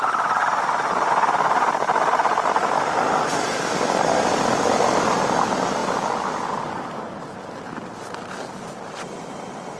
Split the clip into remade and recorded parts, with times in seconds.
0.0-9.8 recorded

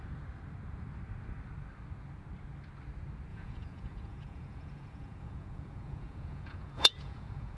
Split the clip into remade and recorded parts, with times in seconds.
0.0-3.3 recorded; 3.3-7.6 remade

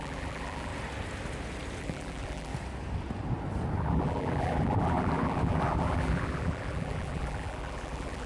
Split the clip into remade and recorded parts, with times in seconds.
0.0-0.7 remade; 0.7-1.8 recorded; 1.8-2.5 remade; 2.5-3.8 recorded; 3.8-8.3 remade

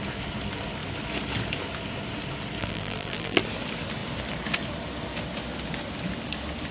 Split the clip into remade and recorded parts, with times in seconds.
0.0-2.6 recorded; 2.6-3.4 remade; 3.4-6.7 recorded

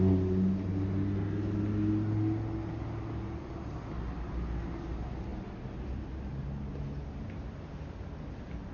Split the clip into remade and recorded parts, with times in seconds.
0.0-8.7 recorded

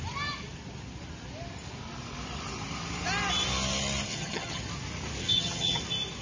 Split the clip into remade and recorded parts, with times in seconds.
0.0-4.1 recorded; 4.1-4.6 remade; 4.6-5.2 recorded; 5.2-5.8 remade; 5.8-6.2 recorded